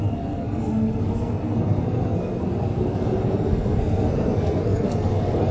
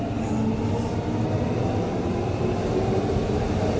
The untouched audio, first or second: second